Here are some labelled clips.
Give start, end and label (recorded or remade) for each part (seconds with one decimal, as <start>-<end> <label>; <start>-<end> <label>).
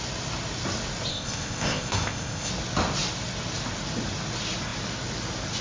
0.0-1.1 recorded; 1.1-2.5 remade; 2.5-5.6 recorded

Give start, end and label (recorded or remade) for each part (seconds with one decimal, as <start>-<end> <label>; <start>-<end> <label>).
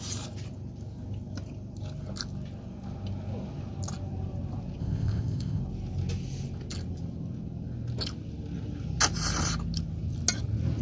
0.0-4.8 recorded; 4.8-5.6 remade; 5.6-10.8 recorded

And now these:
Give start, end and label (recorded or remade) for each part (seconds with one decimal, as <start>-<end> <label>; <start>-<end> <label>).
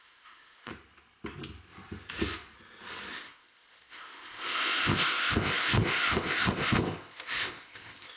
0.0-0.7 remade; 0.7-3.1 recorded; 3.1-8.2 remade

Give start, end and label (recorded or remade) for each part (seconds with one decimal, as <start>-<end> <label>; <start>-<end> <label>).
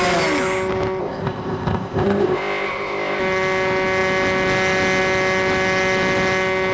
0.0-1.0 recorded; 1.0-3.2 remade; 3.2-6.7 recorded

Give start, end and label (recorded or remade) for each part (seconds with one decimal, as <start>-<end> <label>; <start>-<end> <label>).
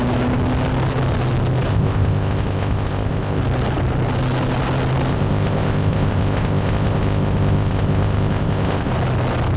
0.0-1.7 recorded; 1.7-3.4 remade; 3.4-5.1 recorded; 5.1-8.9 remade; 8.9-9.6 recorded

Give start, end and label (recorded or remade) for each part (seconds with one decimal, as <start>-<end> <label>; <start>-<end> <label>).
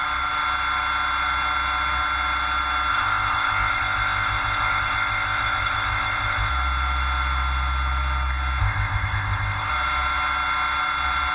0.0-2.9 recorded; 2.9-6.5 remade; 6.5-8.6 recorded; 8.6-9.7 remade; 9.7-11.3 recorded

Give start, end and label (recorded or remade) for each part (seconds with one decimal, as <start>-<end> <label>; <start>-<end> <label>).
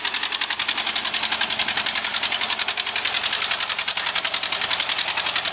0.0-5.5 recorded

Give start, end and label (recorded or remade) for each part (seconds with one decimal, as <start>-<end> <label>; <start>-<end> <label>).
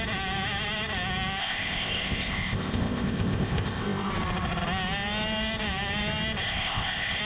0.0-1.4 recorded; 1.4-4.1 remade; 4.1-6.4 recorded; 6.4-7.2 remade